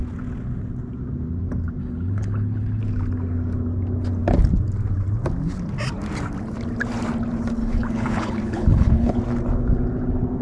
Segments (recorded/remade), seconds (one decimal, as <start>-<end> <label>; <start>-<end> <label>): 0.0-1.8 recorded; 1.8-2.8 remade; 2.8-7.6 recorded; 7.6-9.2 remade; 9.2-10.4 recorded